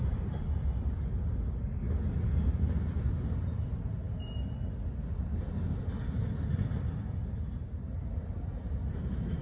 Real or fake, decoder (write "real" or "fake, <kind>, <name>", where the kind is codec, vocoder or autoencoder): real